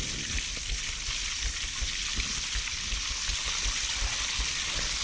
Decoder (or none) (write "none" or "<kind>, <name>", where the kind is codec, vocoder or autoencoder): none